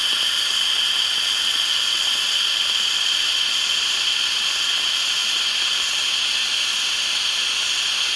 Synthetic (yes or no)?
no